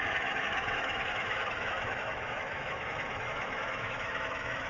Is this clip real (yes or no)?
no